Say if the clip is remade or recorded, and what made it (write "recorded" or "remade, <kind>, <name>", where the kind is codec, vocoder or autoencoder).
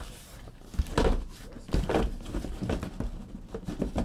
recorded